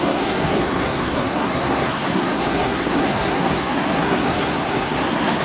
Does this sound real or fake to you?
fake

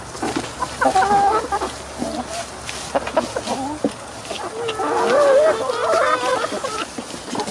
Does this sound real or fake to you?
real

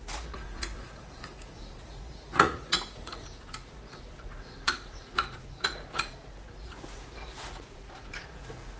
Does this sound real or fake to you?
fake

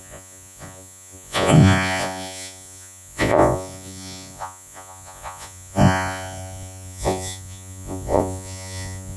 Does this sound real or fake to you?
fake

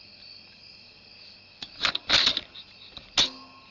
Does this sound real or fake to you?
real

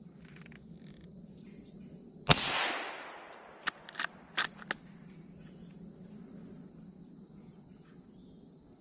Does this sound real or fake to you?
real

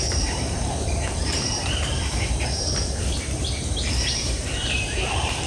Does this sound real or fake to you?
fake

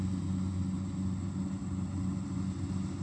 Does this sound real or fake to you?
real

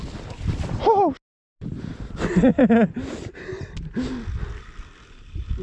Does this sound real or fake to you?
real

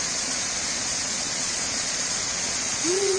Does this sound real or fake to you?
fake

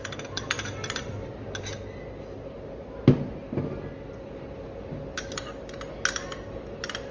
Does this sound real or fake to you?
real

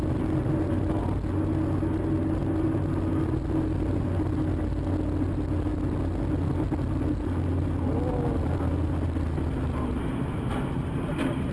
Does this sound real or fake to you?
real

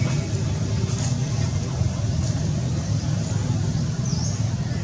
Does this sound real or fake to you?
real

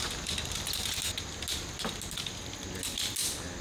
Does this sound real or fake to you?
real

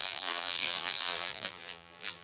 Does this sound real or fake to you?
fake